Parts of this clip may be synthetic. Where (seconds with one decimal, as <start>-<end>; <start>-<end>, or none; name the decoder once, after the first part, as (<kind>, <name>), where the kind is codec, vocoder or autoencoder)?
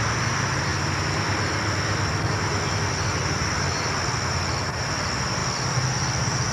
0.0-0.7 (vocoder, BigVGAN v2); 4.6-6.5